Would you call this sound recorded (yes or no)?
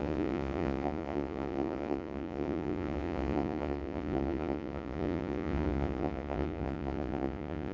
no